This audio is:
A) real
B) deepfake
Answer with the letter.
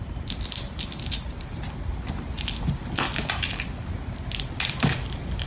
A